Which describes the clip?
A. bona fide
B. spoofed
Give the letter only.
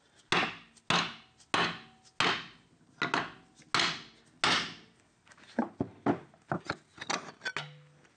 A